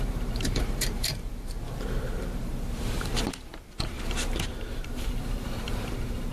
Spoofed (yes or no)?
yes